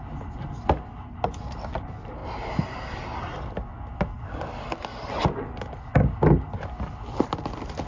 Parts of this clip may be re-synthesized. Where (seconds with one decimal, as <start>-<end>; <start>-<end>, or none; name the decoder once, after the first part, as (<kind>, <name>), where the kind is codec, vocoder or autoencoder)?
none